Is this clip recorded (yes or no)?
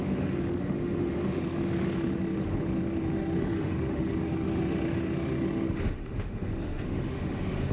no